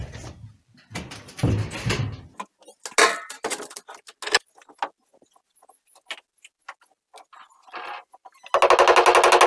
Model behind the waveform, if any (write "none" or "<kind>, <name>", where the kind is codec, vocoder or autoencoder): none